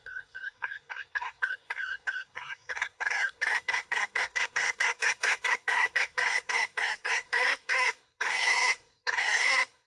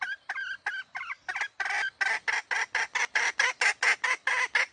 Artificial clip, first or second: first